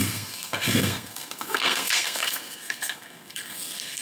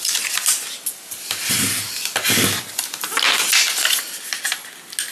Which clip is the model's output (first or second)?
first